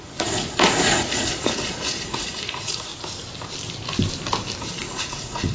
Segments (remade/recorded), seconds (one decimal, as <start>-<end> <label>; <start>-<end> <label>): 0.0-2.9 remade; 2.9-4.6 recorded; 4.6-5.5 remade